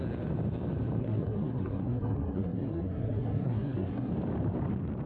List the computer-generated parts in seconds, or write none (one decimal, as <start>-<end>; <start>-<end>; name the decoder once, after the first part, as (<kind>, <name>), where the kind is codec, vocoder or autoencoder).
1.0-4.1 (codec, SNAC)